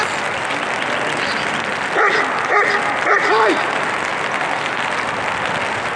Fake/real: real